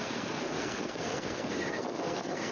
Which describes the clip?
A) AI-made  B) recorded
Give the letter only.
A